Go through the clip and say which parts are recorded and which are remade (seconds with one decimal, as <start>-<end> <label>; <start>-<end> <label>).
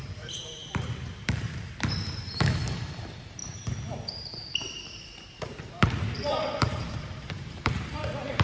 0.0-8.4 remade